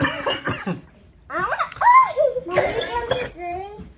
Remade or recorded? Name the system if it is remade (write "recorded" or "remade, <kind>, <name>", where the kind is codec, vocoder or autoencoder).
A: remade, vocoder, BigVGAN v2